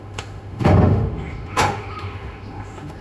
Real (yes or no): no